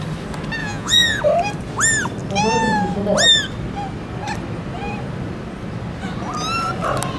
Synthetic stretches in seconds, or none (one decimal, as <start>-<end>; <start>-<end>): 0.6-1.2